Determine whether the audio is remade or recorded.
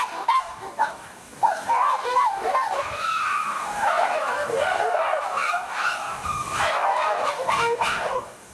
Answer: remade